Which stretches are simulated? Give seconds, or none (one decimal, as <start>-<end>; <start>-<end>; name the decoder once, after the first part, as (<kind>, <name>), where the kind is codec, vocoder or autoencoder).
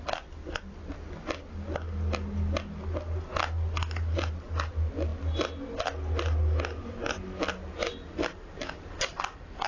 none